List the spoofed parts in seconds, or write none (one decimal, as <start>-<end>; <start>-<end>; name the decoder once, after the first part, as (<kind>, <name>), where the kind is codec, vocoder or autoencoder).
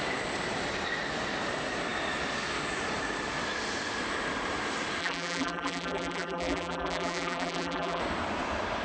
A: 5.0-8.0 (vocoder, BigVGAN v2)